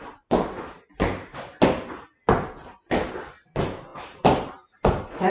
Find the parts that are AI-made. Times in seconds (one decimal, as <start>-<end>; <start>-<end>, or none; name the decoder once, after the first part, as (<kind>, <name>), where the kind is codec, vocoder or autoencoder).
none